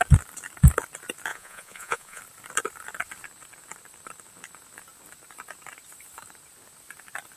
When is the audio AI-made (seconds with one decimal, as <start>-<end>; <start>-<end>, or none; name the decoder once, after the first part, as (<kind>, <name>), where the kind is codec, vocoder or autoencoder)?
1.3-2.2 (vocoder, Vocos)

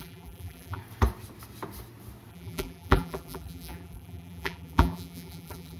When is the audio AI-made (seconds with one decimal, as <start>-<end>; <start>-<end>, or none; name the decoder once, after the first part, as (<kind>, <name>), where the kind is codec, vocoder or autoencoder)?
0.0-0.8 (vocoder, BigVGAN v2); 2.3-5.8

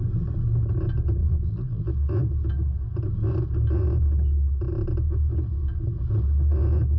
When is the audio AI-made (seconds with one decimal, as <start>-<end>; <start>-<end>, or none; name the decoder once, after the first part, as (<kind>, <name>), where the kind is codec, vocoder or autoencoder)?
1.2-1.9 (vocoder, BigVGAN v2)

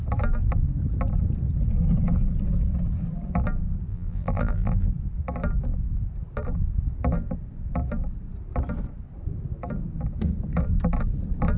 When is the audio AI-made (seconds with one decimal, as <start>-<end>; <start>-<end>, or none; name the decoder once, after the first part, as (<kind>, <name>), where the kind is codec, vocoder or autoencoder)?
3.9-4.9 (vocoder, BigVGAN v2)

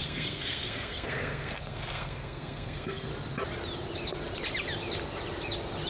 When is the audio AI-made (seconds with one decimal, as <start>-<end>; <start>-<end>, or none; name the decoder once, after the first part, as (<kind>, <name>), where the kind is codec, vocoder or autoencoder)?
0.0-3.1 (codec, SNAC)

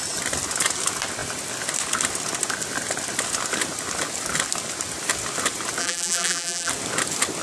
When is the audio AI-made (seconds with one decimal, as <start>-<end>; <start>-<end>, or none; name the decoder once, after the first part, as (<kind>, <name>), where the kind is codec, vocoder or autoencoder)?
5.8-6.7 (vocoder, BigVGAN v2)

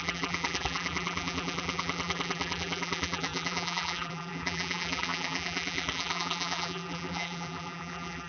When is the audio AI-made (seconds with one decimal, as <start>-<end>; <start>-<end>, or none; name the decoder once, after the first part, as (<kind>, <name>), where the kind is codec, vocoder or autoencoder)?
0.0-8.3 (vocoder, BigVGAN v2)